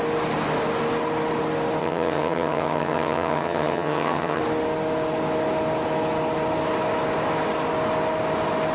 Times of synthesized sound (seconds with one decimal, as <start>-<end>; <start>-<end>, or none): 1.8-4.4